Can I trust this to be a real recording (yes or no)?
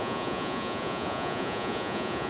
no